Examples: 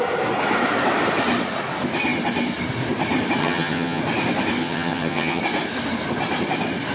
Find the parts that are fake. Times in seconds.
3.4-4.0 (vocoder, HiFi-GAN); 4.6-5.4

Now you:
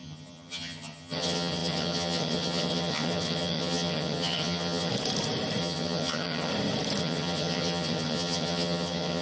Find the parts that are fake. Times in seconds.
0.0-4.9 (vocoder, HiFi-GAN); 5.6-6.5; 7.0-9.2